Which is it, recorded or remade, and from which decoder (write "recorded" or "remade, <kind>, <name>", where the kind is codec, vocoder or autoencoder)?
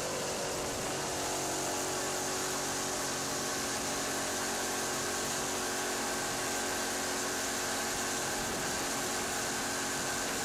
recorded